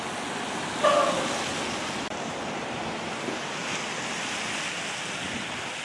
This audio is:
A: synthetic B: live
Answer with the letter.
B